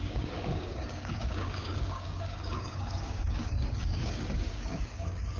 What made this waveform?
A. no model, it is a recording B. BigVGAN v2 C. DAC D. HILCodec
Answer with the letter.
C